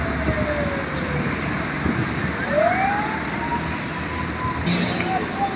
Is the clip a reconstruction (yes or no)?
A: no